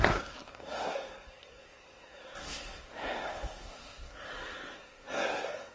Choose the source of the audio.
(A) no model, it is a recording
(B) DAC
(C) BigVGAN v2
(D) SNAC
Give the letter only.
D